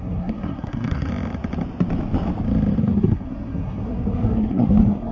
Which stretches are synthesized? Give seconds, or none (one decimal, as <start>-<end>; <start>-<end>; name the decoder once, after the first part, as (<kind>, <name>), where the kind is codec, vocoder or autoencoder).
0.0-1.1 (codec, SNAC); 2.8-5.1